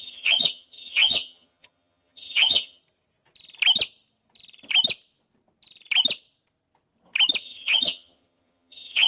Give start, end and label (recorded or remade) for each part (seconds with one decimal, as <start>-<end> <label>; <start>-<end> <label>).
0.0-2.8 remade; 2.8-7.4 recorded; 7.4-9.1 remade